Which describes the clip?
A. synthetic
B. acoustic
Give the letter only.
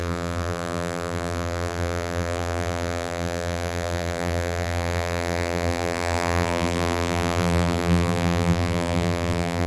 A